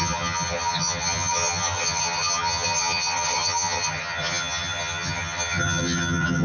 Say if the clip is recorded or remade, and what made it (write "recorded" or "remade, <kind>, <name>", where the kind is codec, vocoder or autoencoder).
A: remade, vocoder, HiFi-GAN